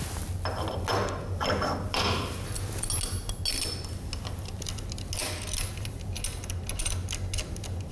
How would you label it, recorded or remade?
recorded